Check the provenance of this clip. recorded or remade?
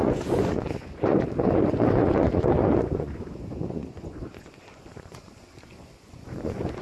remade